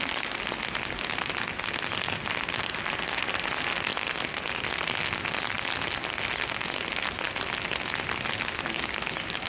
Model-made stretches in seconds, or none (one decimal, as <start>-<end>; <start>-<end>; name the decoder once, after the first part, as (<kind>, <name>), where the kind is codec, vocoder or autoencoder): none